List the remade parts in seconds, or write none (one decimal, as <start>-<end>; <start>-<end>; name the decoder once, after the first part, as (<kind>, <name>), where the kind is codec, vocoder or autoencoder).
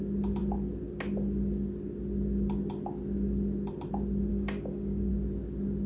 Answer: 4.3-5.1 (codec, DAC)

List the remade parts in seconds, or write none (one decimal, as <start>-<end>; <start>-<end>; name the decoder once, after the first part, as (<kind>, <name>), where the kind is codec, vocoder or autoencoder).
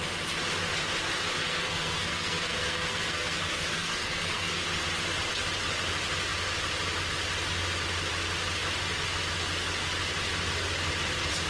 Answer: 1.4-4.6 (codec, SNAC)